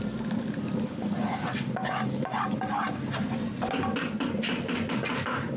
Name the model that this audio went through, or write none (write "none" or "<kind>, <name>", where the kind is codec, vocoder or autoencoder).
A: none